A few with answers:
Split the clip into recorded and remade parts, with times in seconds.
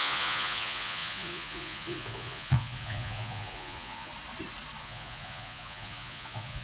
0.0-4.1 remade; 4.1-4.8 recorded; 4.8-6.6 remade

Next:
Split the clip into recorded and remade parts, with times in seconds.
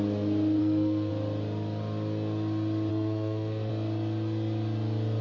0.0-0.6 recorded; 0.6-1.1 remade; 1.1-2.9 recorded; 2.9-3.7 remade; 3.7-5.2 recorded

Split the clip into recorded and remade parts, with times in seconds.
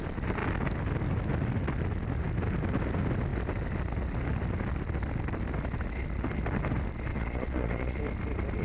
0.0-7.1 recorded; 7.1-8.0 remade; 8.0-8.6 recorded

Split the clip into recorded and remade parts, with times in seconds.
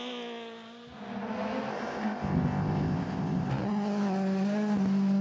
0.0-1.7 recorded; 1.7-3.5 remade; 3.5-5.2 recorded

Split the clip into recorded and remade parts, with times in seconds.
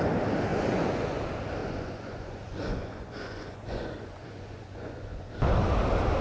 0.0-0.5 recorded; 0.5-1.2 remade; 1.2-1.6 recorded; 1.6-5.3 remade; 5.3-6.2 recorded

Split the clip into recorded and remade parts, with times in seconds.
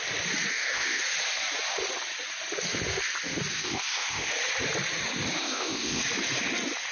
0.0-0.5 recorded; 0.5-1.0 remade; 1.0-3.5 recorded; 3.5-4.3 remade; 4.3-5.4 recorded; 5.4-6.0 remade; 6.0-6.9 recorded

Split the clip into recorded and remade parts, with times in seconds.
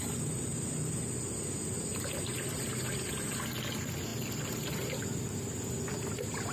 0.0-6.5 recorded